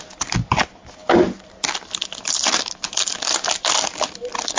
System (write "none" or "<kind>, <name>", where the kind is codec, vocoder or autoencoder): none